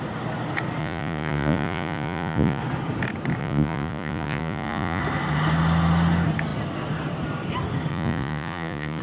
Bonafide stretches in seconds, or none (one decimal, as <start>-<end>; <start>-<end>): 0.0-0.8; 2.6-3.4; 5.0-7.9